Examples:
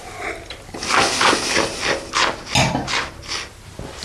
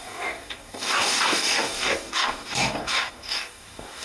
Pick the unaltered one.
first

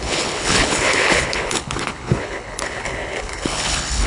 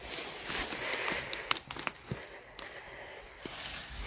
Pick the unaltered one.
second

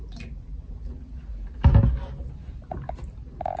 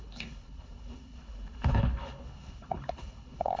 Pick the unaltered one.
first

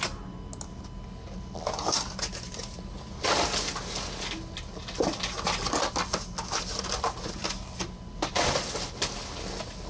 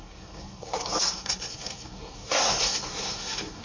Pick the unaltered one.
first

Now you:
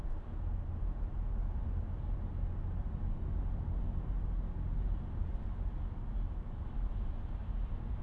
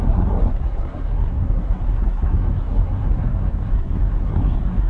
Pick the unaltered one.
first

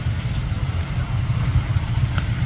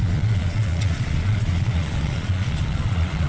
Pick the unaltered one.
first